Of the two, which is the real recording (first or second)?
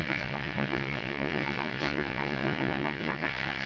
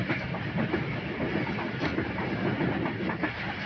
second